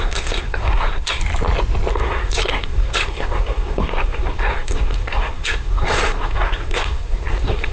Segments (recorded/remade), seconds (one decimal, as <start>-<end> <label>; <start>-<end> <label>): 0.0-1.2 remade; 1.2-1.9 recorded; 1.9-7.7 remade